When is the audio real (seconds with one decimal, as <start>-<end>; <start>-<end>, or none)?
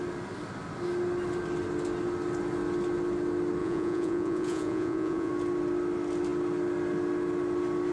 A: 0.0-3.6; 5.3-7.9